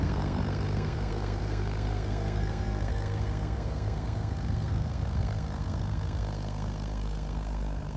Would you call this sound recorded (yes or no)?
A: no